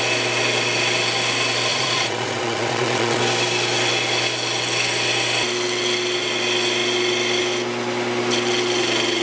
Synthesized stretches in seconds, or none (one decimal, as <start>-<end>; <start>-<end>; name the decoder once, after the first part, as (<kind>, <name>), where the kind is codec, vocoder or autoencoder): 1.7-3.2 (vocoder, Vocos)